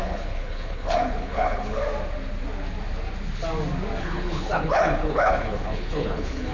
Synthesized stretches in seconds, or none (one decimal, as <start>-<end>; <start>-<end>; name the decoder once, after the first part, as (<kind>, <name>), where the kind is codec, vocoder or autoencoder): 0.0-1.8 (codec, HILCodec); 4.0-6.5